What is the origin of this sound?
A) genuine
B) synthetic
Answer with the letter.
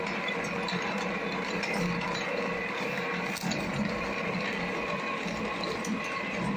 A